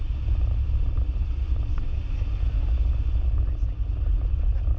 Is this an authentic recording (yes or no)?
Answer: yes